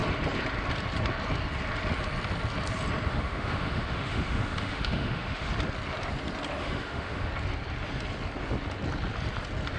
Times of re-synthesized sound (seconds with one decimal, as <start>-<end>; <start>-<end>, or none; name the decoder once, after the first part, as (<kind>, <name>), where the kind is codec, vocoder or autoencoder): 3.1-5.5 (autoencoder, DAC-VAE); 6.6-7.3